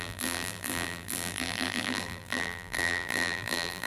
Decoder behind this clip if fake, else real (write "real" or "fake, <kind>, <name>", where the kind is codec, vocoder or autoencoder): fake, vocoder, BigVGAN v2